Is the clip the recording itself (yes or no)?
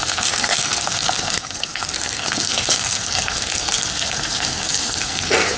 no